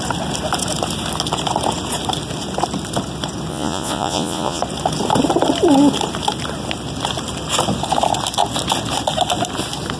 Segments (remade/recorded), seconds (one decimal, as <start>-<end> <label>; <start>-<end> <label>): 0.0-3.5 recorded; 3.5-4.6 remade; 4.6-10.0 recorded